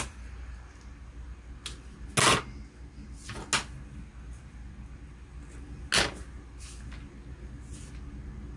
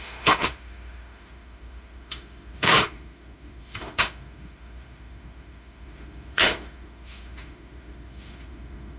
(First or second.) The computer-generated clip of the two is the second